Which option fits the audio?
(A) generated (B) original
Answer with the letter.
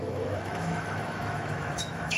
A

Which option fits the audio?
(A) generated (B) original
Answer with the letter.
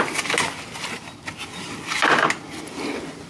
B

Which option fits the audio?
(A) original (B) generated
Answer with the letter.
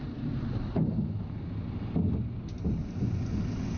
A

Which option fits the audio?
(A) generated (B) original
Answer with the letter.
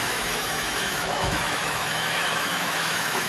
A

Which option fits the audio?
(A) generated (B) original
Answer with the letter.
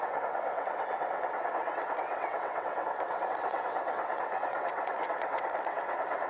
A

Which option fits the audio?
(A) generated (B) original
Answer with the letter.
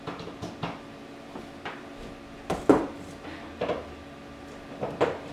B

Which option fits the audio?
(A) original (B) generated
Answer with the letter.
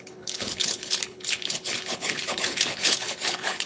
B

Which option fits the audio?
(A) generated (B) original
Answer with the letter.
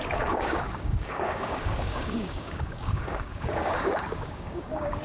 A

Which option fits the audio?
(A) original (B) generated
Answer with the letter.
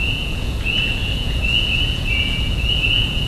B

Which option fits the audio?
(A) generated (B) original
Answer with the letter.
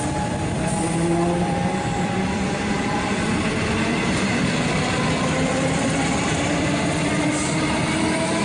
A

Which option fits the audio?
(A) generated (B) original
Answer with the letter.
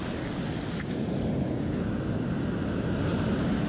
B